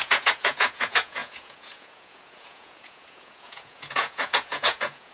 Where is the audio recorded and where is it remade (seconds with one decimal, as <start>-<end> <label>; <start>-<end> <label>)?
0.0-5.1 remade